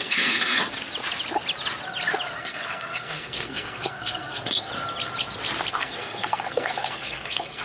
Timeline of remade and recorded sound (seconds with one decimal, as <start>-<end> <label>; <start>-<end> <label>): 0.0-0.6 remade; 0.6-2.4 recorded; 2.4-4.7 remade; 4.7-5.7 recorded; 5.7-7.6 remade